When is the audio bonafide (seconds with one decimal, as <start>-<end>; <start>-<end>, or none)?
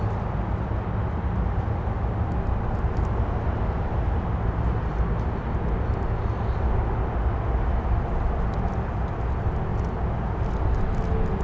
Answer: 0.0-11.4